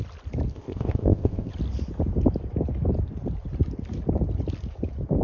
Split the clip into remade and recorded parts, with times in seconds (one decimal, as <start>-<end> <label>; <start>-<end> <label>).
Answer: 0.0-0.5 recorded; 0.5-1.5 remade; 1.5-5.2 recorded